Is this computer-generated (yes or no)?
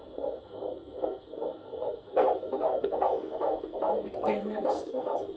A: yes